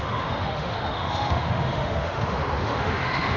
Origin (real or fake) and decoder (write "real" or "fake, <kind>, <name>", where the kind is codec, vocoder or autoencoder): fake, autoencoder, DAC-VAE